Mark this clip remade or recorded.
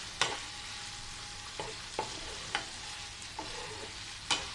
recorded